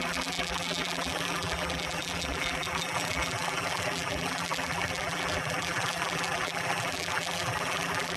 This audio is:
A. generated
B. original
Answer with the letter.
A